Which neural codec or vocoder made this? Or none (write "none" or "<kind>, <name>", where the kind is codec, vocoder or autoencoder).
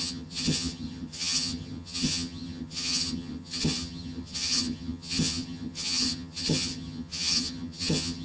vocoder, HiFi-GAN